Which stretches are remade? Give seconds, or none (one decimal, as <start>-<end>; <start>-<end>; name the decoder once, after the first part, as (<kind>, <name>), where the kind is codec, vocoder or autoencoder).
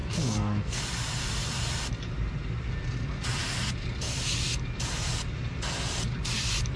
0.0-0.8 (codec, SNAC)